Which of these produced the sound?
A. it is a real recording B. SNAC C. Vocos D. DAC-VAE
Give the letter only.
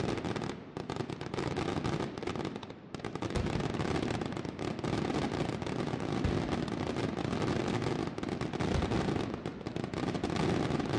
A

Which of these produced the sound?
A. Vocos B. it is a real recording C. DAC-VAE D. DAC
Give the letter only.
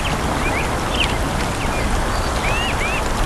B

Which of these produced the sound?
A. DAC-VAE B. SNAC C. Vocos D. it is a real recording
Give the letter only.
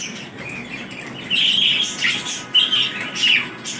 D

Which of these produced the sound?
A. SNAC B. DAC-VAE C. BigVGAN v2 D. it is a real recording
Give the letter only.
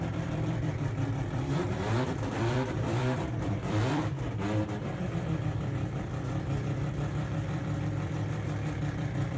C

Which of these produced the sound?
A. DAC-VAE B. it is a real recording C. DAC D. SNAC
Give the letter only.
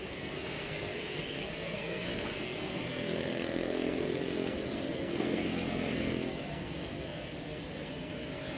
D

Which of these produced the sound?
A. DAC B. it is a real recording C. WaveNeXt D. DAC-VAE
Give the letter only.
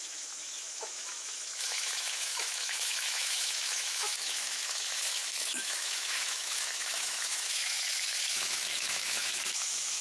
D